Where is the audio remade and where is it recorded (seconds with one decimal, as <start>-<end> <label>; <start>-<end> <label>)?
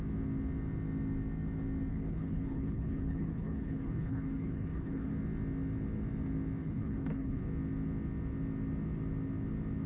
0.0-1.9 recorded; 1.9-5.1 remade; 5.1-6.6 recorded; 6.6-7.4 remade; 7.4-9.9 recorded